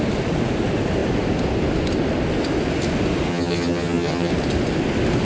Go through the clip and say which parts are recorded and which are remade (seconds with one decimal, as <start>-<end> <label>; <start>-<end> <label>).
0.0-3.3 recorded; 3.3-4.3 remade; 4.3-5.2 recorded